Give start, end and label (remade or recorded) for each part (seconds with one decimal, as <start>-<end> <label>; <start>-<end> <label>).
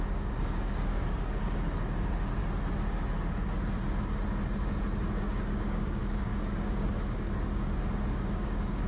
0.0-2.4 remade; 2.4-5.2 recorded; 5.2-8.9 remade